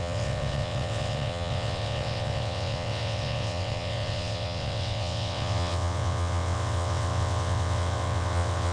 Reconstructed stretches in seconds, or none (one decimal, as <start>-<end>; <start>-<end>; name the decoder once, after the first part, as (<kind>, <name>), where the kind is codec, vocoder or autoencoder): 0.0-8.7 (vocoder, WaveNeXt)